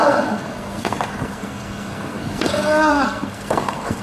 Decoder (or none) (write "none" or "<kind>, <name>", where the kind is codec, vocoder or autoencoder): codec, SNAC